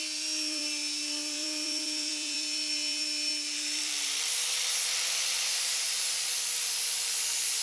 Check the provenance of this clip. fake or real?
fake